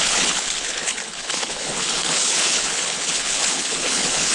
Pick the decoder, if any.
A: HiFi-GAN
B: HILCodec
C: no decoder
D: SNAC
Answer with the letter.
B